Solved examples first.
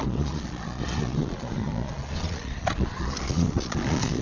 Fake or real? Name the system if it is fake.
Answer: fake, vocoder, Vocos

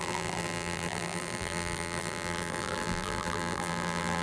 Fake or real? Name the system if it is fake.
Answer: fake, vocoder, BigVGAN v2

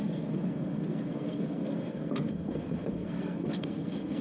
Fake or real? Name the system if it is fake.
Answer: fake, codec, SNAC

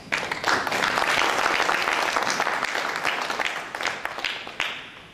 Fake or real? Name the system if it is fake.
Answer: real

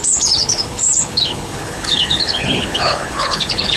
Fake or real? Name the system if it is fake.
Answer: fake, codec, HILCodec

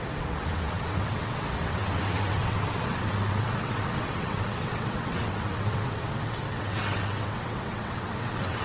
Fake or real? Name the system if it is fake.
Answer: fake, vocoder, WaveNeXt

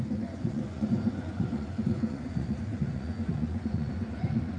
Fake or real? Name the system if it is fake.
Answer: fake, vocoder, Vocos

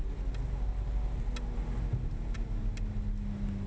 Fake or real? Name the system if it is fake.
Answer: real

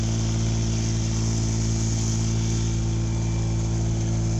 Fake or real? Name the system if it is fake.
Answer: real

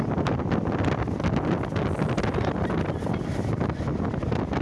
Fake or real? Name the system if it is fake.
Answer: real